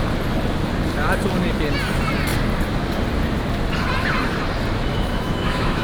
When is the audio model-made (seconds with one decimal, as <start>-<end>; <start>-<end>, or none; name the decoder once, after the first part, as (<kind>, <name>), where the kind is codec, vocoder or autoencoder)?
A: 4.9-5.8 (autoencoder, DAC-VAE)